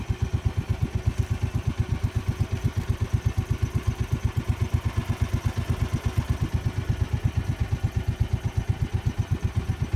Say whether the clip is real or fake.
real